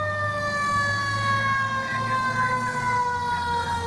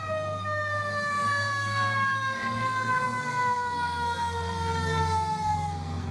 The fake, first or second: second